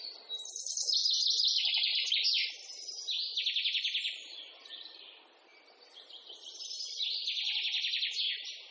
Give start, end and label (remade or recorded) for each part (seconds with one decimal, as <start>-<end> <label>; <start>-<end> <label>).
0.0-1.9 recorded; 1.9-2.5 remade; 2.5-5.5 recorded; 5.5-8.1 remade; 8.1-8.7 recorded